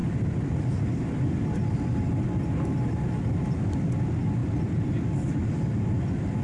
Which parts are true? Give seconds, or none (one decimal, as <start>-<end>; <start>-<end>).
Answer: 3.1-4.4; 5.4-6.4